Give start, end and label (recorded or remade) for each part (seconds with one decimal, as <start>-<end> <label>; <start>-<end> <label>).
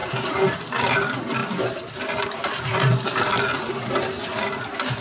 0.0-5.0 recorded